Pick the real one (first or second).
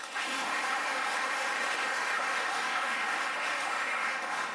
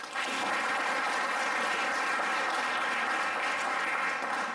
second